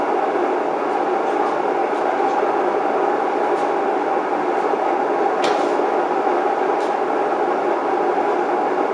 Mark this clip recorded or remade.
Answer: recorded